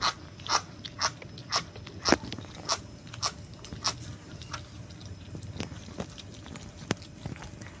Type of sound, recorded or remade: recorded